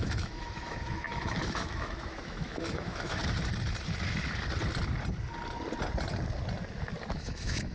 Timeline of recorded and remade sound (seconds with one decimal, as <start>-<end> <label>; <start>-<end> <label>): 0.0-3.2 remade; 3.2-7.1 recorded; 7.1-7.7 remade